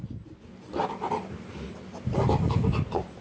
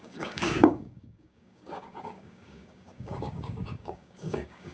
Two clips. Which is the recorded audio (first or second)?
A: first